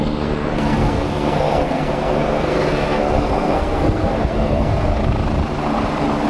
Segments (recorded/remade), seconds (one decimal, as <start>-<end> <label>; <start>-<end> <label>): 0.0-5.0 remade; 5.0-6.3 recorded